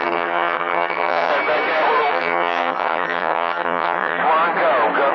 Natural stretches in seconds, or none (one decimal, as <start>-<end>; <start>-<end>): 1.3-2.1; 4.2-5.1